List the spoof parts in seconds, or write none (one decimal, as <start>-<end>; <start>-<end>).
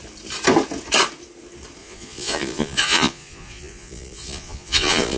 1.8-5.2